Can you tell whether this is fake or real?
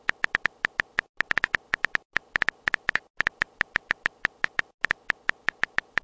real